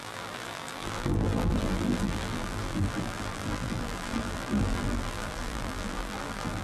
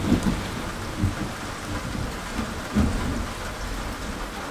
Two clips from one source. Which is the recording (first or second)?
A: second